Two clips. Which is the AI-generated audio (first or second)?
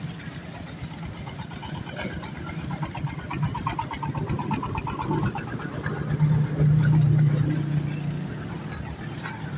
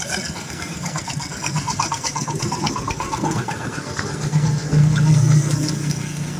second